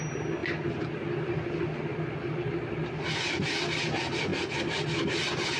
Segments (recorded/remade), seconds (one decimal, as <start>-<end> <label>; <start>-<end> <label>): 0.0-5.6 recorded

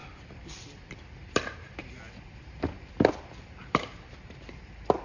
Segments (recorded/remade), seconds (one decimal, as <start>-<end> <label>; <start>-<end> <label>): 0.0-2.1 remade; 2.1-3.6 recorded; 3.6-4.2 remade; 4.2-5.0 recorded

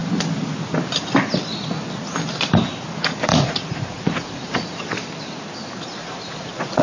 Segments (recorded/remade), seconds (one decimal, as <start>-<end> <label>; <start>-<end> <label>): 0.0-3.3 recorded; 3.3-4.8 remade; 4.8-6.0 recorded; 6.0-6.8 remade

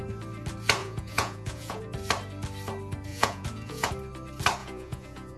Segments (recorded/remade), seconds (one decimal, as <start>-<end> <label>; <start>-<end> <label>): 0.0-0.8 recorded; 0.8-1.8 remade; 1.8-3.1 recorded; 3.1-3.9 remade; 3.9-4.6 recorded; 4.6-5.4 remade

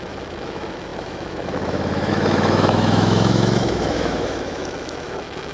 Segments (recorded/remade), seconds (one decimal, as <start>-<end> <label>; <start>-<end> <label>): 0.0-5.5 remade

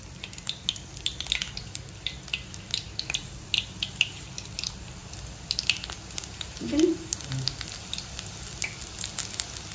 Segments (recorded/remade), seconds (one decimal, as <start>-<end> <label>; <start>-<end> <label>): 0.0-9.7 recorded

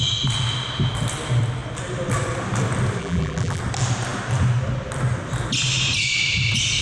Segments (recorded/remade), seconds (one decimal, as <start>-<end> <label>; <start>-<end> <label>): 0.0-3.0 recorded; 3.0-3.6 remade; 3.6-6.8 recorded